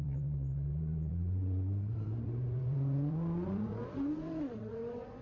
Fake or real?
fake